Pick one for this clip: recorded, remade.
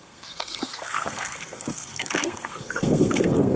remade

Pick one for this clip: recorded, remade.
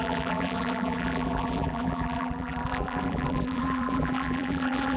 remade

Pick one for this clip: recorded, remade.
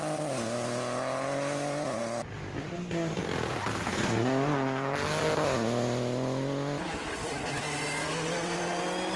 recorded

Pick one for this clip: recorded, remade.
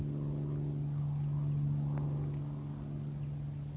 recorded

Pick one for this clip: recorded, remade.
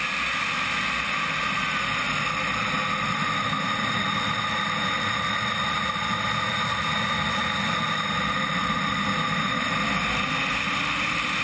recorded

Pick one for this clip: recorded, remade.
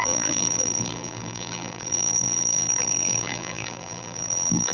remade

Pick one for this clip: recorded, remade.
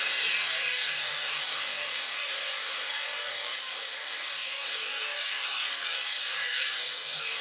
remade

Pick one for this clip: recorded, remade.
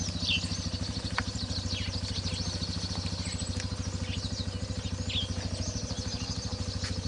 recorded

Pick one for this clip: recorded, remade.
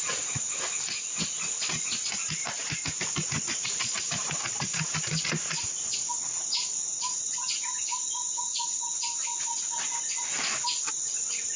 recorded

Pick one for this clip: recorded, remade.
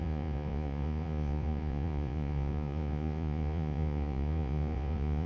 remade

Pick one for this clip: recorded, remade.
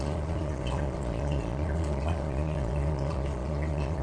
remade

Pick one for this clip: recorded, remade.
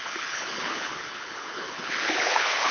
remade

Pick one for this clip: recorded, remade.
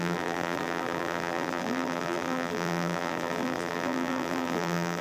remade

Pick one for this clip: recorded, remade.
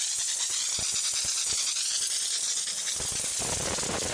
recorded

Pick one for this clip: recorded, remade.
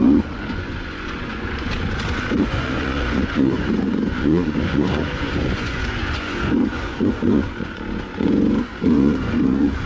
remade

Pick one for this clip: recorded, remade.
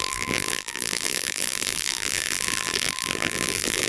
remade